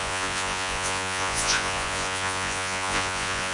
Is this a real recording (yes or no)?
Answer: no